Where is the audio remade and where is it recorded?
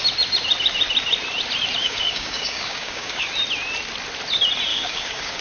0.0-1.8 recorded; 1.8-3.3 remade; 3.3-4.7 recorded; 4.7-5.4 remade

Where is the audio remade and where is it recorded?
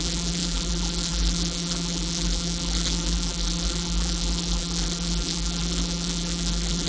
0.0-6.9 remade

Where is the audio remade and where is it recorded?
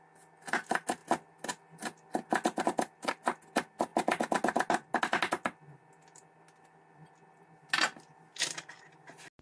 0.0-9.4 recorded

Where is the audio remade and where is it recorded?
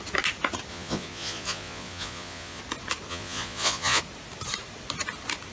0.0-0.7 recorded; 0.7-2.6 remade; 2.6-3.1 recorded; 3.1-4.0 remade; 4.0-5.5 recorded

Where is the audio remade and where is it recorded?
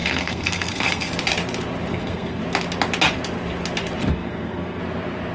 0.0-1.1 remade; 1.1-1.9 recorded; 1.9-2.4 remade; 2.4-4.1 recorded; 4.1-4.8 remade; 4.8-5.3 recorded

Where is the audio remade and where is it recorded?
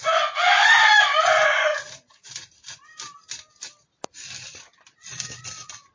0.0-1.7 recorded; 1.7-2.3 remade; 2.3-5.9 recorded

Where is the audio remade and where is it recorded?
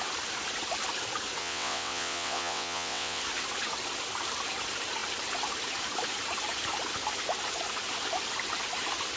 0.0-1.4 recorded; 1.4-3.2 remade; 3.2-9.2 recorded